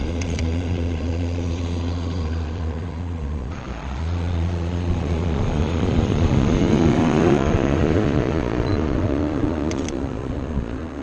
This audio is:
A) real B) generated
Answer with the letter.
B